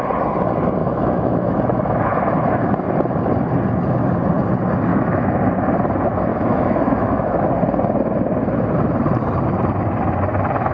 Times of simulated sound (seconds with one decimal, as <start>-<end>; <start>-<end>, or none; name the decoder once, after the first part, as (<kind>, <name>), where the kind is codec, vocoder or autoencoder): 0.8-2.1 (autoencoder, DAC-VAE); 4.9-5.4; 6.3-7.5